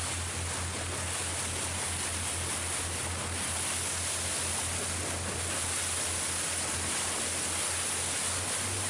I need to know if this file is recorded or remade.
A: recorded